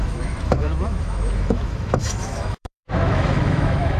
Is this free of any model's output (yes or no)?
no